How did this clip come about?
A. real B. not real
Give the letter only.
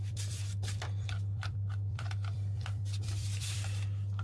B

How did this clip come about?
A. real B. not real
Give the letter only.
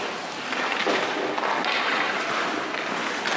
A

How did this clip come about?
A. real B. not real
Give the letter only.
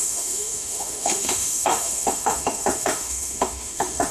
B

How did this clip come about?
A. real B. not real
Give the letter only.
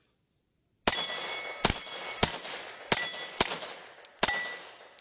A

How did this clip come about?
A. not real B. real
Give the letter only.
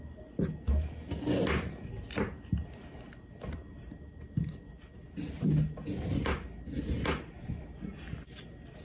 B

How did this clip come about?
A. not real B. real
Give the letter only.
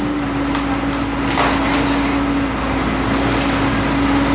B